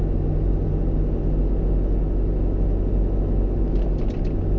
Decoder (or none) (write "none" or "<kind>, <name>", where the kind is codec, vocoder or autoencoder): none